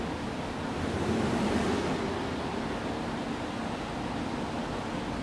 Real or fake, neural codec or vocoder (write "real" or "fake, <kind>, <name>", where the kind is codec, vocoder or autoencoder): real